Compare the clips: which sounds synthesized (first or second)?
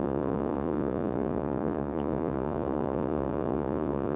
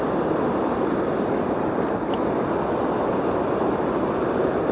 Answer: first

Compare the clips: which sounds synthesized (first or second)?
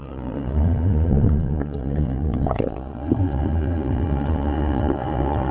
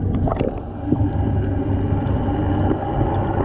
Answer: first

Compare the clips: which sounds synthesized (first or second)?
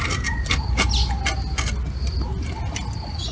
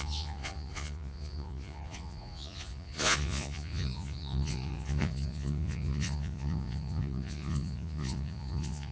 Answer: second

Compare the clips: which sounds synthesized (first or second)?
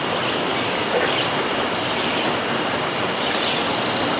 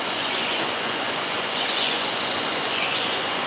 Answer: second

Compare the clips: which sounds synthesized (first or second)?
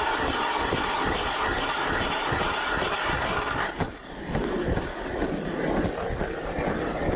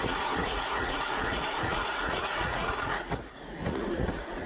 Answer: second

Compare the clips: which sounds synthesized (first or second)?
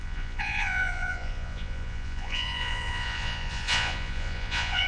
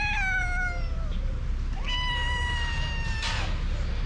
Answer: first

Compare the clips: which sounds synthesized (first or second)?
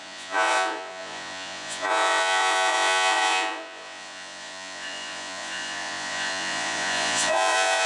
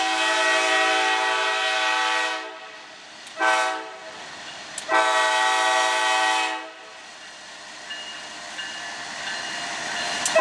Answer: first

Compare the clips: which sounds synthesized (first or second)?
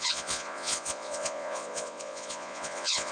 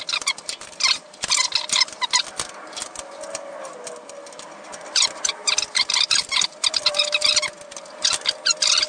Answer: first